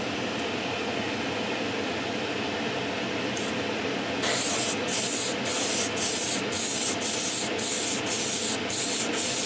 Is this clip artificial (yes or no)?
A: no